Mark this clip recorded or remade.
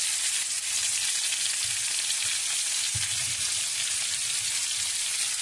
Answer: recorded